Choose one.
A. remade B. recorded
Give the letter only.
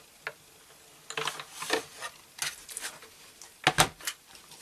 B